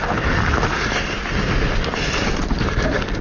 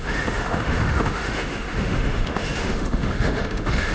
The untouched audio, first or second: first